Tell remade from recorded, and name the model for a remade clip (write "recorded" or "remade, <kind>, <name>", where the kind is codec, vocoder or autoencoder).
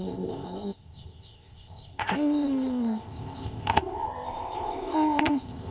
remade, codec, ZipCodec